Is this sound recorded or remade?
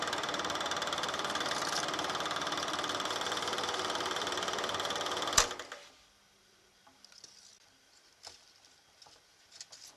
recorded